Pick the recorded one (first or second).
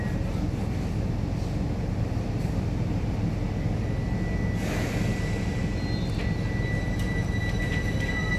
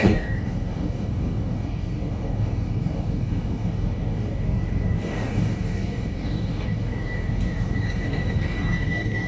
first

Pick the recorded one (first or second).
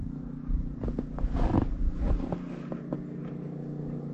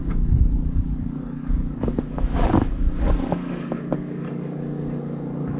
first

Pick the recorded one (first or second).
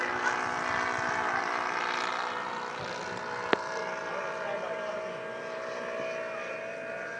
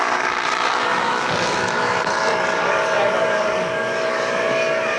first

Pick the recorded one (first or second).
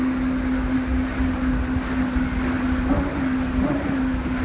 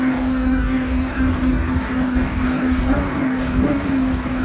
first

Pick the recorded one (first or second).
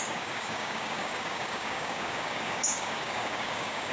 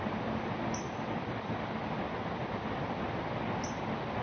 second